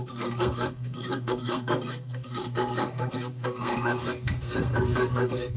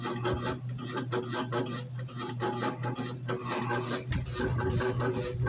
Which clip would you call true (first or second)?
second